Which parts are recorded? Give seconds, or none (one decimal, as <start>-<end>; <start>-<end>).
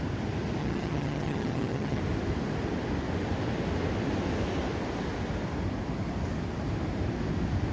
0.0-0.6; 2.0-7.7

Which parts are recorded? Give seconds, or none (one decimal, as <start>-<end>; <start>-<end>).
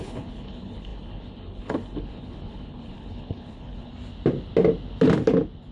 3.9-5.7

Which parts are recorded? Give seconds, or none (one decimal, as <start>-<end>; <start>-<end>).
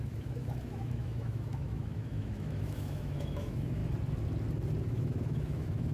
3.8-4.8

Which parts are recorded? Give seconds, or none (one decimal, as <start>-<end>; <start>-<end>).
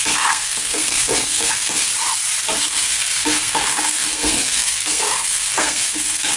1.9-2.6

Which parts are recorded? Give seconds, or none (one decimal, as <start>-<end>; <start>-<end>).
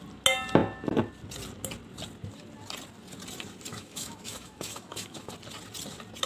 0.0-3.7; 5.3-6.3